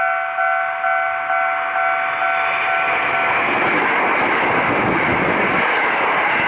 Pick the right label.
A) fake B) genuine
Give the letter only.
B